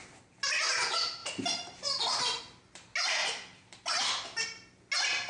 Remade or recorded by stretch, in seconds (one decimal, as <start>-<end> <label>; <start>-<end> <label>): 0.0-3.2 recorded; 3.2-4.1 remade; 4.1-5.3 recorded